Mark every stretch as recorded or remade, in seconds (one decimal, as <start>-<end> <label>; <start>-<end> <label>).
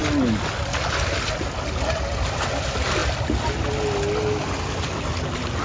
0.0-5.6 recorded